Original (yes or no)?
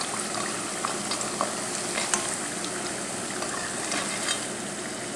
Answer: yes